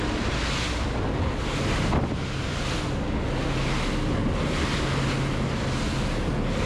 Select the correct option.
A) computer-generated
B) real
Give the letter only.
B